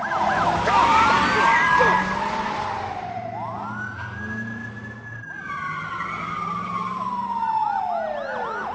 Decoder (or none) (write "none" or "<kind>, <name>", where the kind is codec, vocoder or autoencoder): none